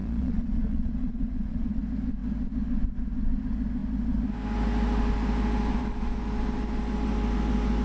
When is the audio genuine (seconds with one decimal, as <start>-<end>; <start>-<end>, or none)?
1.8-7.8